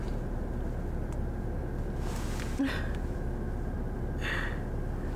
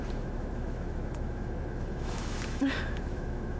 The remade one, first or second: second